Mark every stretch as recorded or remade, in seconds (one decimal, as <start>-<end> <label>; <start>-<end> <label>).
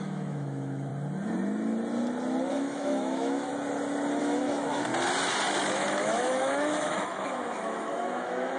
0.0-0.9 remade; 0.9-2.5 recorded; 2.5-3.5 remade; 3.5-4.2 recorded; 4.2-4.9 remade; 4.9-5.7 recorded; 5.7-8.6 remade